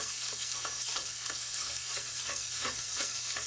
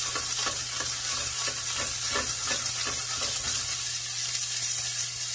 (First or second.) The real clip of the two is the second